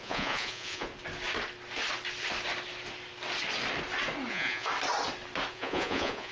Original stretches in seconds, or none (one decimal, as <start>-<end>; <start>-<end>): 0.9-4.3; 4.7-5.5